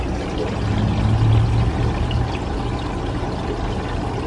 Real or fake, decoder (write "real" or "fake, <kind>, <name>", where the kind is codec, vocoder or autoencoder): real